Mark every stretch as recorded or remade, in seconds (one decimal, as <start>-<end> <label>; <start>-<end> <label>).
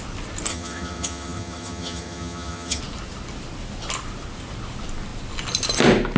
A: 0.0-0.5 recorded; 0.5-2.8 remade; 2.8-6.2 recorded